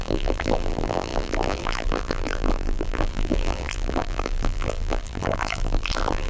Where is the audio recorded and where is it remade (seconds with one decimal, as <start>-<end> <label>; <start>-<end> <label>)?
0.0-6.3 remade